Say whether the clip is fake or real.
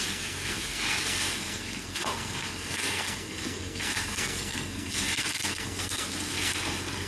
fake